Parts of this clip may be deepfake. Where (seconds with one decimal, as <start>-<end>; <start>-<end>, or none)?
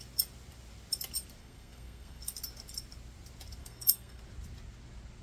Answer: 1.4-2.2; 3.6-4.2